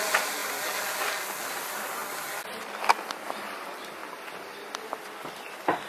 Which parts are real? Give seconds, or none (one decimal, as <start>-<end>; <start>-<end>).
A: 0.4-1.5; 2.0-2.7; 4.0-5.3